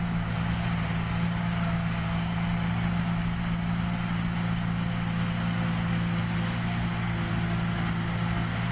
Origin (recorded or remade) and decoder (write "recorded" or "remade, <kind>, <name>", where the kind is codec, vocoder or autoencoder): recorded